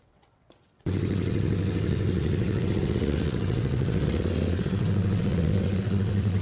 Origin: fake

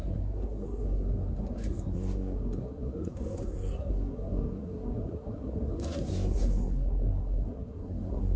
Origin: fake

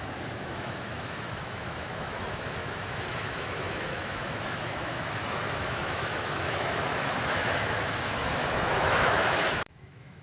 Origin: fake